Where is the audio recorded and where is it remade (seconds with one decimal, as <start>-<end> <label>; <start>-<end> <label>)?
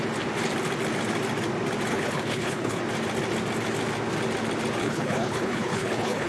0.0-1.9 recorded; 1.9-2.8 remade; 2.8-4.8 recorded; 4.8-6.3 remade